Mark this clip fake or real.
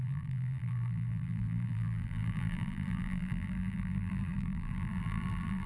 fake